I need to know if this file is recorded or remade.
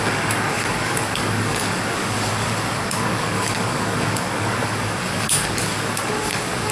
remade